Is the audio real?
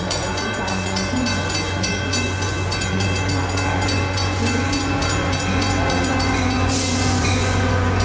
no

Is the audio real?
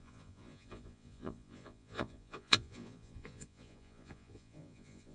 no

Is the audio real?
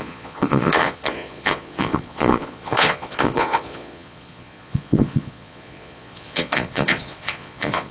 no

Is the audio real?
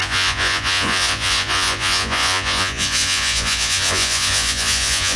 no